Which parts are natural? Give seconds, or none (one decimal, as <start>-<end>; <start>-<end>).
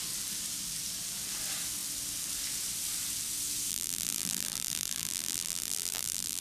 0.0-3.7